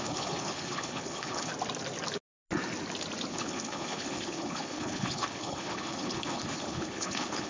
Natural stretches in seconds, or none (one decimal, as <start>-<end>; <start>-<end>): 1.5-3.3

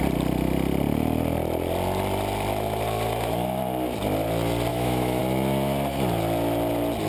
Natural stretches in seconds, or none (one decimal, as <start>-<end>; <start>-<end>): 0.0-4.7; 5.2-7.1

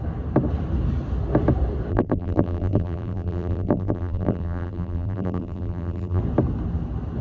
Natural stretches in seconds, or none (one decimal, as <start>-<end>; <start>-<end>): 0.0-1.9; 6.2-7.2